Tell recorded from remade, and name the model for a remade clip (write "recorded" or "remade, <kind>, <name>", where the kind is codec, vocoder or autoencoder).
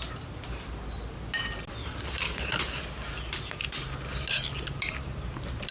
recorded